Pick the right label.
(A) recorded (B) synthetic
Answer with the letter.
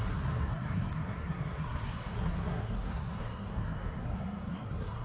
B